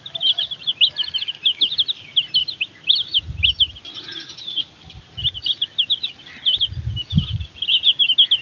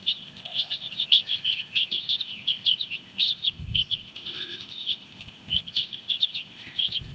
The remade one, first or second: second